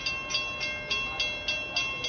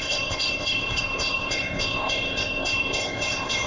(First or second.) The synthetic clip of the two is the second